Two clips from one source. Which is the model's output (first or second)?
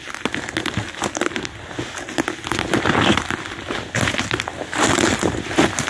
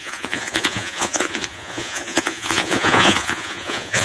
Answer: second